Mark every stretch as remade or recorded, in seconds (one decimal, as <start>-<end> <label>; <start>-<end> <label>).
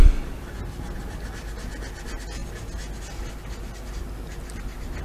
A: 0.0-5.0 recorded